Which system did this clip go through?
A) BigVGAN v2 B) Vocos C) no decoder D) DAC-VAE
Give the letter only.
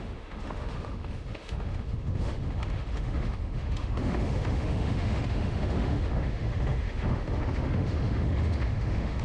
D